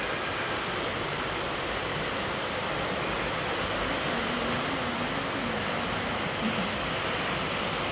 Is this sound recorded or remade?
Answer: recorded